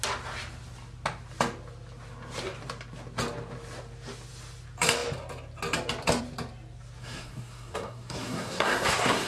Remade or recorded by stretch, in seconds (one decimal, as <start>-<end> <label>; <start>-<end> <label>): 0.0-7.0 recorded; 7.0-9.3 remade